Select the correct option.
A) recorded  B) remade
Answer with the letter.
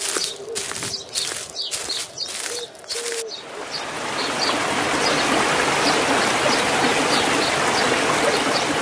A